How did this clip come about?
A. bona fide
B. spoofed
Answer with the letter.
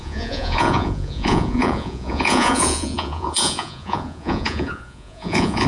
B